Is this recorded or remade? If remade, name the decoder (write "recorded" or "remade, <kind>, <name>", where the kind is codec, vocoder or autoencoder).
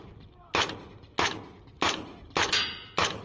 recorded